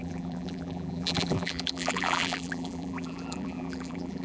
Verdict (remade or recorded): remade